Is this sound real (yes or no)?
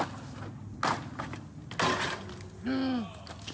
yes